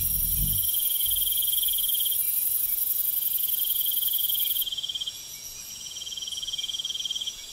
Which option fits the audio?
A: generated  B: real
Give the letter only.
A